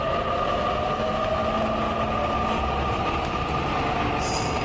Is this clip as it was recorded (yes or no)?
yes